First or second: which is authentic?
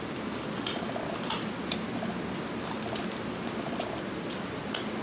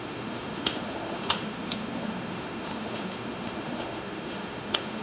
first